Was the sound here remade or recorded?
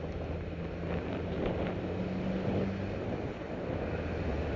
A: recorded